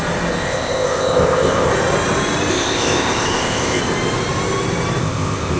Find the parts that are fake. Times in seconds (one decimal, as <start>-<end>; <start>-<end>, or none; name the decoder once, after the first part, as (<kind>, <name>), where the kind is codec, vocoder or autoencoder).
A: 0.4-1.7 (codec, ZipCodec); 2.5-3.8; 5.0-5.6